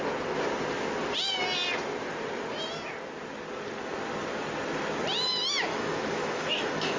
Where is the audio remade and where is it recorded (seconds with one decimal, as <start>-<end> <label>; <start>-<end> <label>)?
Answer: 0.0-5.7 recorded; 5.7-7.0 remade